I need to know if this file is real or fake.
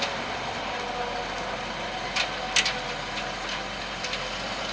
real